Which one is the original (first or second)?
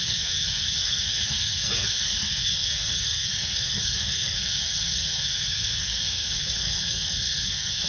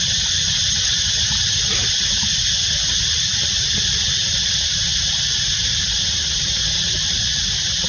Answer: second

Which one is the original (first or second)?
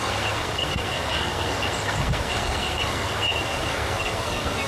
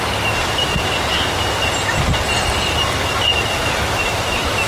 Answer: second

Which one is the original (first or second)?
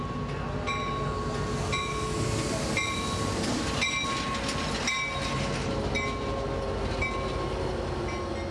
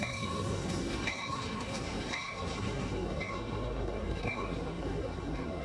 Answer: first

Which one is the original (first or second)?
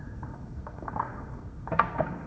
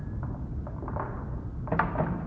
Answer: second